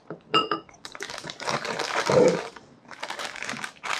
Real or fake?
fake